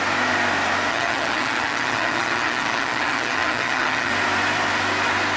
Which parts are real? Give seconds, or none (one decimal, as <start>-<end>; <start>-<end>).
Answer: 0.0-0.9; 4.1-5.4